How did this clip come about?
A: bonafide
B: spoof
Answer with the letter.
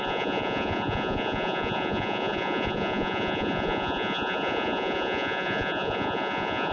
B